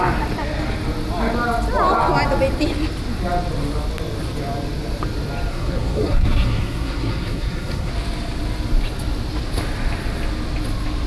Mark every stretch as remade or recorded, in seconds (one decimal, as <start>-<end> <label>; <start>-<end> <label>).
0.0-5.5 recorded; 5.5-7.9 remade; 7.9-11.1 recorded